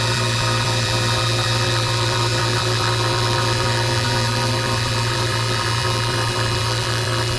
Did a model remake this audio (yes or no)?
yes